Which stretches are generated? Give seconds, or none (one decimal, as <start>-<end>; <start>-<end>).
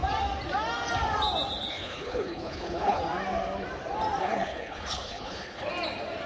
1.7-3.0; 4.2-5.7